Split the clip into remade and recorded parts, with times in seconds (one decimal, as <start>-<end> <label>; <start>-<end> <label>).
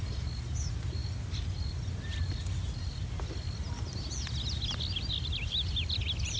0.0-6.4 recorded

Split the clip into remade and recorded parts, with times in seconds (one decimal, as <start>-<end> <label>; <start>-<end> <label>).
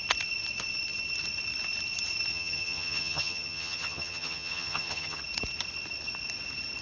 0.0-2.3 recorded; 2.3-5.2 remade; 5.2-6.8 recorded